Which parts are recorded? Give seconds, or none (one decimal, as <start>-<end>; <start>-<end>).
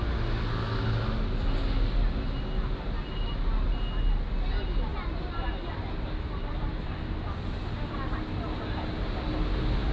0.0-9.9